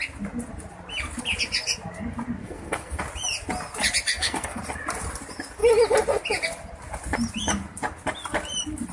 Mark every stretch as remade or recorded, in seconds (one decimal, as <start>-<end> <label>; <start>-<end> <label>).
0.0-2.4 recorded; 2.4-3.0 remade; 3.0-4.1 recorded; 4.1-4.6 remade; 4.6-8.9 recorded